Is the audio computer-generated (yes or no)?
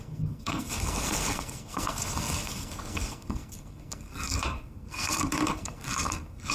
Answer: yes